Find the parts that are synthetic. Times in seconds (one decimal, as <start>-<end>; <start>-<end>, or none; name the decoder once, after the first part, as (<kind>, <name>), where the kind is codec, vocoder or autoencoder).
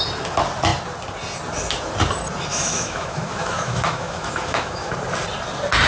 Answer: 2.5-4.9 (autoencoder, DAC-VAE)